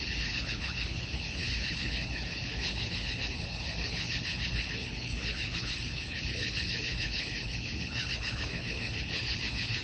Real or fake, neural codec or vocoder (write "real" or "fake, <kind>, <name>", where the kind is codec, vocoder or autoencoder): fake, codec, HILCodec